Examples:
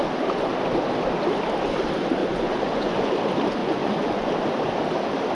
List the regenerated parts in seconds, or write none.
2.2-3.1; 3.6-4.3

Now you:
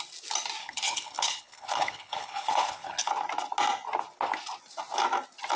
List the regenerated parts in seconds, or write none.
0.6-3.1

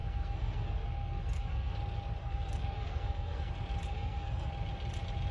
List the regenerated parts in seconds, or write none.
0.0-1.7; 2.2-3.5; 3.9-4.5